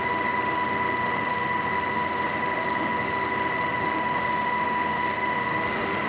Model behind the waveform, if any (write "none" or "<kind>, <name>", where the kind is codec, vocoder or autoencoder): autoencoder, DAC-VAE